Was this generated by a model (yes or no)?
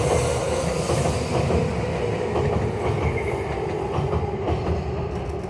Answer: no